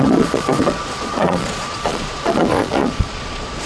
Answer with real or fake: fake